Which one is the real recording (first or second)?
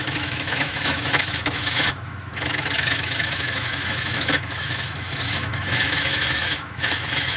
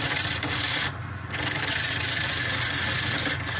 second